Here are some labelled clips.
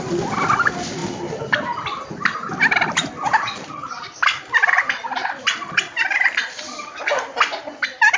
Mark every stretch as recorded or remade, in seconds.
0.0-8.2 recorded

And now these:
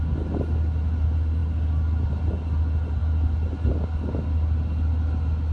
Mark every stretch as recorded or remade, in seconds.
0.0-5.5 recorded

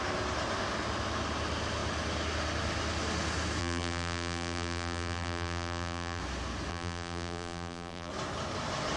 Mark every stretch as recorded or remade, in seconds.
0.0-3.6 recorded; 3.6-6.2 remade; 6.2-6.7 recorded; 6.7-8.1 remade; 8.1-9.0 recorded

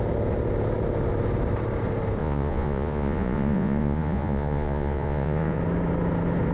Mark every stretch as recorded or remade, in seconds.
0.0-2.2 recorded; 2.2-5.6 remade; 5.6-6.5 recorded